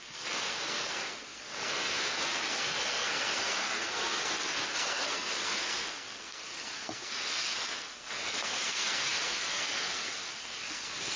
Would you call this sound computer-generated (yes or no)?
yes